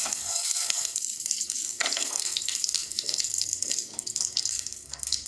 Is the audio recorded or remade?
remade